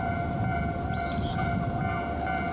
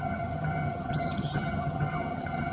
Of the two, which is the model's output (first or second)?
second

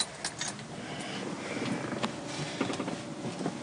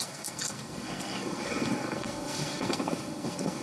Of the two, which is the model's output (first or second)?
second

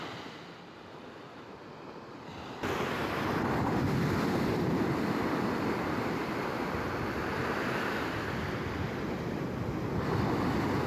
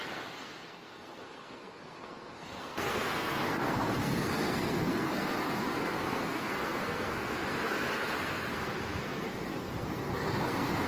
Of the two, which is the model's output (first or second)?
second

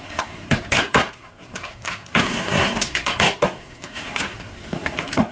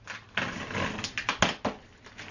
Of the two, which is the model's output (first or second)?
first